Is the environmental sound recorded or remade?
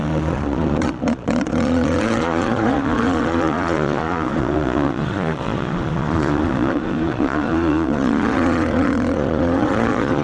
remade